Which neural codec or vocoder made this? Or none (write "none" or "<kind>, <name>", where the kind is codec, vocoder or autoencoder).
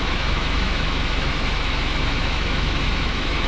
autoencoder, DAC-VAE